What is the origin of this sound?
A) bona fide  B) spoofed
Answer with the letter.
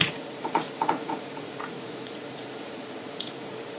B